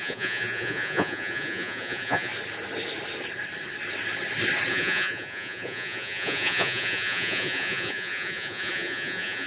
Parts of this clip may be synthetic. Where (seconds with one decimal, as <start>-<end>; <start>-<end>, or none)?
0.0-2.3; 4.7-9.5